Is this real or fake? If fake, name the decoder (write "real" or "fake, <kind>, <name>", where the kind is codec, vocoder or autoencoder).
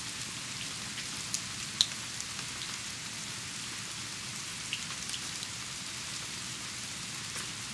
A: real